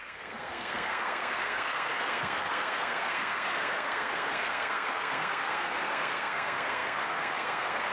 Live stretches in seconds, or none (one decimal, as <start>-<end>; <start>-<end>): none